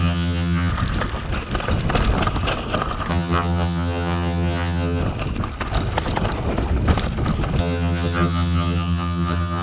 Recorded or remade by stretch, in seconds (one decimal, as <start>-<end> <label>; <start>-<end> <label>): 0.0-0.7 remade; 0.7-3.1 recorded; 3.1-5.0 remade; 5.0-7.6 recorded; 7.6-9.6 remade